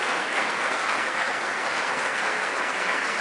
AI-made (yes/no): yes